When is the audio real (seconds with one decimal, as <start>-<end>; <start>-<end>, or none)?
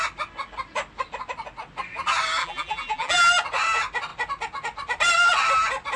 0.0-2.4; 3.3-6.0